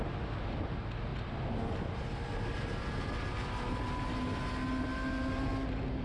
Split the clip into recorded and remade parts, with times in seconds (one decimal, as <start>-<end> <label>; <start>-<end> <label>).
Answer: 0.0-1.1 recorded; 1.1-1.6 remade; 1.6-4.9 recorded; 4.9-5.5 remade; 5.5-6.0 recorded